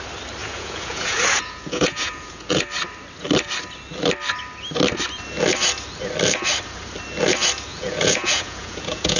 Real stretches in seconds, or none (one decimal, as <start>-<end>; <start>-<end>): 0.0-0.4; 2.6-7.7